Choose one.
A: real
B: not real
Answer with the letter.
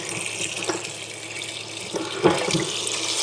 A